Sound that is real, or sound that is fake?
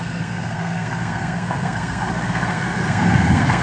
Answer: fake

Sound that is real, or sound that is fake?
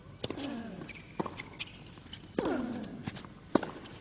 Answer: real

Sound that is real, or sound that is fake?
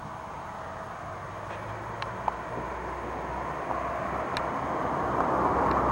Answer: real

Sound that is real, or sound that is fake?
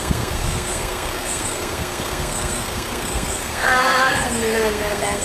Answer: fake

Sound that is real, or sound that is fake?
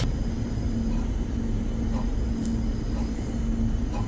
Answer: real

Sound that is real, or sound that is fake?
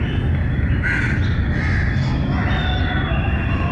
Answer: real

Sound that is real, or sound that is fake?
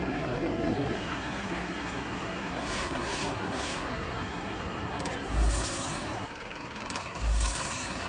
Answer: fake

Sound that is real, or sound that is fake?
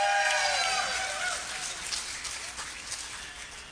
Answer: real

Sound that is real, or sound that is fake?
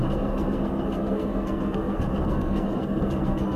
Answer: fake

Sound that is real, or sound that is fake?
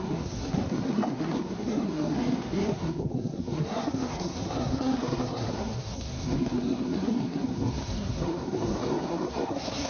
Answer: fake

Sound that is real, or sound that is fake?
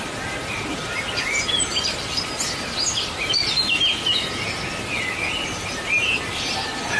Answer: real